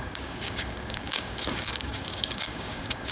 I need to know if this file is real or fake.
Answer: fake